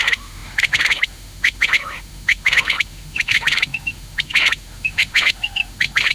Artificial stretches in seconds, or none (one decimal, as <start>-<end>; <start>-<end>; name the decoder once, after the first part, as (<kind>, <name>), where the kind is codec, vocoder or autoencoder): 0.0-6.1 (autoencoder, DAC-VAE)

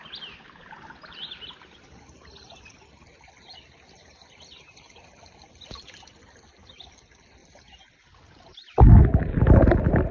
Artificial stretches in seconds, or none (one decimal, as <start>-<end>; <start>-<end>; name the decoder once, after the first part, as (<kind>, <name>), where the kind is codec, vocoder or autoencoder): none

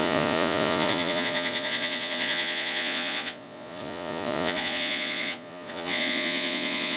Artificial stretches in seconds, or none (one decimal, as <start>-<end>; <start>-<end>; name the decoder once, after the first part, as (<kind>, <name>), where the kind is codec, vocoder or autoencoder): 0.0-7.0 (vocoder, Vocos)